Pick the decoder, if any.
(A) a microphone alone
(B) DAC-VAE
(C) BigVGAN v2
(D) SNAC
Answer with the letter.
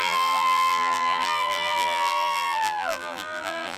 C